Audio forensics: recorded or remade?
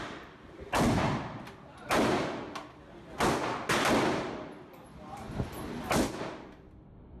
recorded